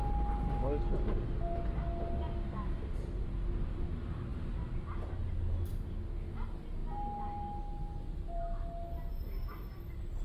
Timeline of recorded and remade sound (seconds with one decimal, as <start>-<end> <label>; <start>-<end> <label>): 0.0-10.2 recorded